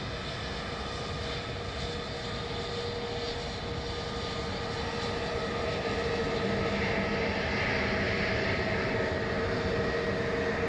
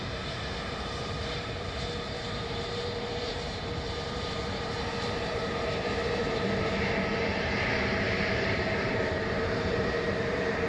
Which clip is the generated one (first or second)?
second